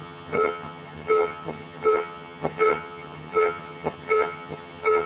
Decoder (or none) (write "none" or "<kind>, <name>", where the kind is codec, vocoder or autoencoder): vocoder, HiFi-GAN